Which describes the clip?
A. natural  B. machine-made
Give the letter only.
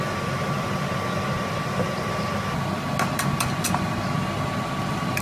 A